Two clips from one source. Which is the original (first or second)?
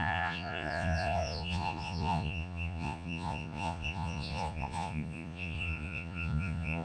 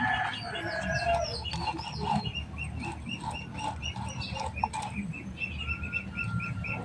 second